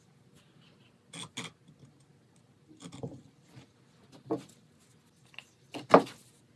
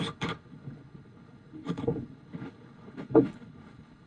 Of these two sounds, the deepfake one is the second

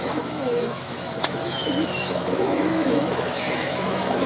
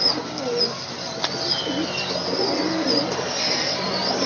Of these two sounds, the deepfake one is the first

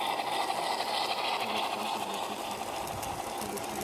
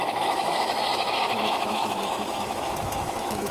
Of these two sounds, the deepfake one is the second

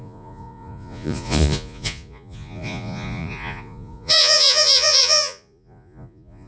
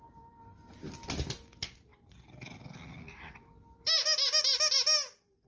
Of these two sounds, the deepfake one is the first